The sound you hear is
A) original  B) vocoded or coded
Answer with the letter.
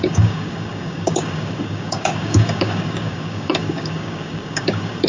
B